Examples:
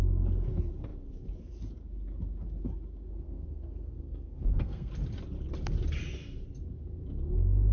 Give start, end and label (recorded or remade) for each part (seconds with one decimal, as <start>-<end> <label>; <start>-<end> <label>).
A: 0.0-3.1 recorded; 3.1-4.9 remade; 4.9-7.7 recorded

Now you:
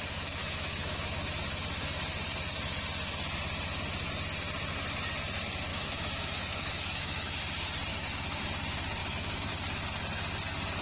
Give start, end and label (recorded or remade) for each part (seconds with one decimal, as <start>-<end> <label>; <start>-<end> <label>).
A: 0.0-0.4 recorded; 0.4-1.4 remade; 1.4-5.7 recorded; 5.7-7.4 remade; 7.4-7.9 recorded; 7.9-8.4 remade; 8.4-9.0 recorded; 9.0-9.5 remade; 9.5-10.8 recorded

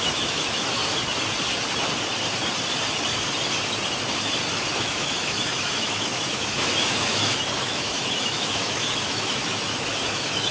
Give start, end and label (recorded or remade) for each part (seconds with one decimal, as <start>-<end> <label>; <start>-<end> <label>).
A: 0.0-0.8 remade; 0.8-4.7 recorded; 4.7-10.5 remade

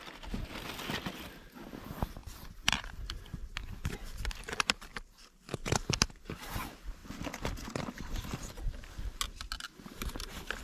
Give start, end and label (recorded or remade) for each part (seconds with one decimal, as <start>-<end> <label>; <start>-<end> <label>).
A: 0.0-2.2 recorded; 2.2-2.9 remade; 2.9-3.4 recorded; 3.4-6.3 remade; 6.3-10.6 recorded

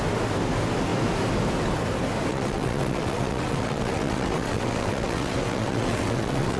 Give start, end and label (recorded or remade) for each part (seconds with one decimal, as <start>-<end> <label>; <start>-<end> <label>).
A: 0.0-2.3 recorded; 2.3-6.6 remade